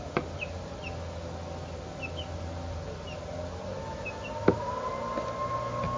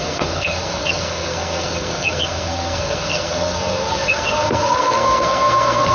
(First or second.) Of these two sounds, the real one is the first